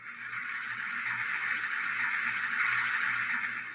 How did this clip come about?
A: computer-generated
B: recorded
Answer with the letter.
B